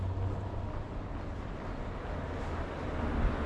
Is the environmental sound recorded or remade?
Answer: recorded